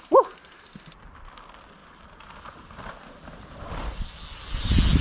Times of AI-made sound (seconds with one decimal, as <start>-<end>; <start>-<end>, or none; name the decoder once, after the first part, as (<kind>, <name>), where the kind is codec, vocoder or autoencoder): none